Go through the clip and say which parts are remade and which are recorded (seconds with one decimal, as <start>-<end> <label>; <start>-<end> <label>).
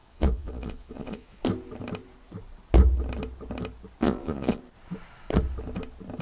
0.0-1.4 remade; 1.4-4.0 recorded; 4.0-4.6 remade; 4.6-6.2 recorded